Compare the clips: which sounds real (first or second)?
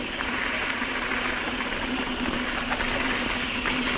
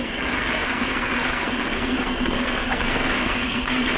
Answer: first